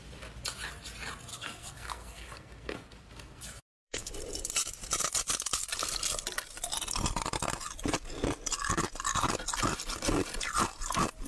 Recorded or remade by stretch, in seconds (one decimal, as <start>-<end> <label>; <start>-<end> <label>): 0.0-1.3 recorded; 1.3-4.1 remade; 4.1-11.3 recorded